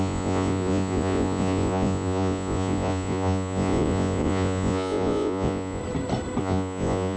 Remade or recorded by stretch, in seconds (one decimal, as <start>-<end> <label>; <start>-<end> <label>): 0.0-5.8 remade; 5.8-6.4 recorded; 6.4-7.2 remade